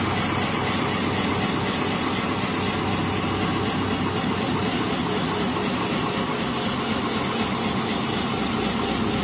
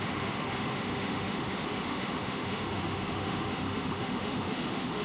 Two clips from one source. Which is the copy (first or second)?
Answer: second